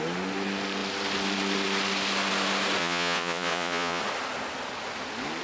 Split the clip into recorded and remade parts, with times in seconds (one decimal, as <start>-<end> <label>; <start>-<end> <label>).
0.0-2.8 recorded; 2.8-4.0 remade; 4.0-5.4 recorded